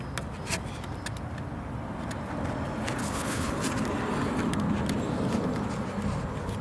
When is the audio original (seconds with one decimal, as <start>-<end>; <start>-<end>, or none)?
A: 0.0-3.0; 3.5-6.6

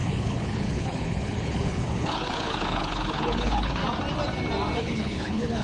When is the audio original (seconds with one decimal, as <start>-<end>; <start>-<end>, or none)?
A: 3.8-4.8

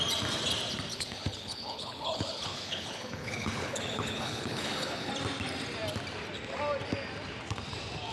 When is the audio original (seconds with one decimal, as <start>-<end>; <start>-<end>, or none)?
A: 0.0-0.9; 5.1-8.1